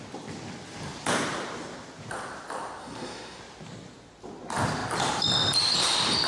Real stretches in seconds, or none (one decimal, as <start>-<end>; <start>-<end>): 0.0-2.8; 3.4-6.3